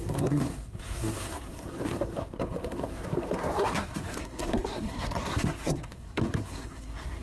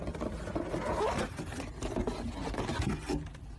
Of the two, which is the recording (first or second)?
second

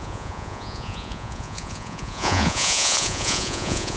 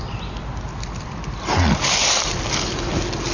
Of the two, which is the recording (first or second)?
second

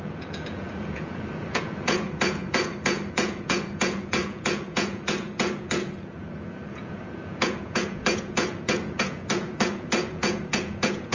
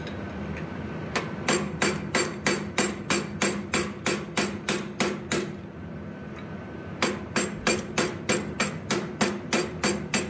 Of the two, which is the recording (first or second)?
second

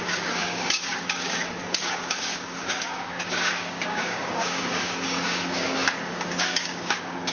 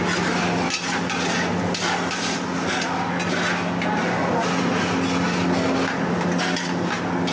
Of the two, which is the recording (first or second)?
second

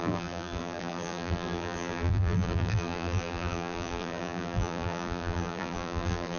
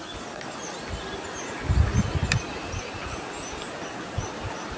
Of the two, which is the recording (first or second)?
second